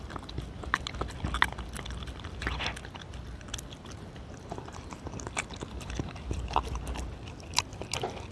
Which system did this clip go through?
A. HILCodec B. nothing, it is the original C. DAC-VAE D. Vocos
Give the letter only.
B